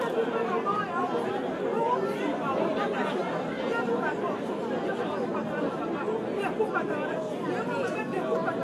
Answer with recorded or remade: recorded